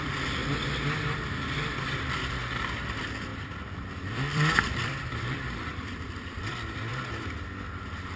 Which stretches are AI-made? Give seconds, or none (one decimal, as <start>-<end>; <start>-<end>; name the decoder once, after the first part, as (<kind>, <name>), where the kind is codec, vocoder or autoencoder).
0.0-0.4 (vocoder, BigVGAN v2); 1.3-6.9